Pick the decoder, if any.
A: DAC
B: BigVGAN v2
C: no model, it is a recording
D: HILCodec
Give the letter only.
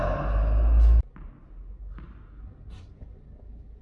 C